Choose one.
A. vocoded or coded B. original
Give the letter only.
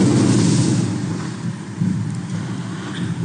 B